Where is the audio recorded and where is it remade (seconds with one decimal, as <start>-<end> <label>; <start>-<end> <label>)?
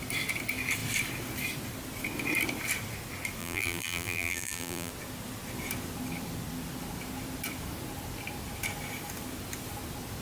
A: 0.0-3.4 recorded; 3.4-4.9 remade; 4.9-10.2 recorded